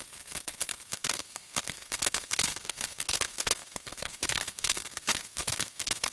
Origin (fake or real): fake